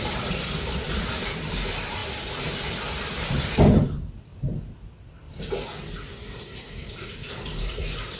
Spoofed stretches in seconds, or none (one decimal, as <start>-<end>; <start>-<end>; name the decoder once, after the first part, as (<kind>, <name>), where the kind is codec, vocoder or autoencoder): 0.0-4.3 (vocoder, BigVGAN v2); 6.0-8.2